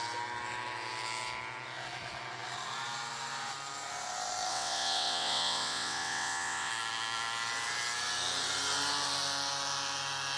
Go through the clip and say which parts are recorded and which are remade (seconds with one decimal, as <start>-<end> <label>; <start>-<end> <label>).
0.0-4.5 recorded; 4.5-6.7 remade; 6.7-10.4 recorded